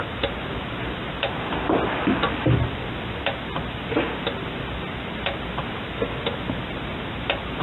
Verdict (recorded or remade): recorded